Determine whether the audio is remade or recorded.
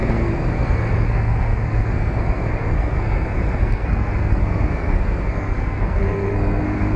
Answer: remade